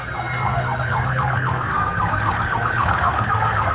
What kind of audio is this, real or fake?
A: fake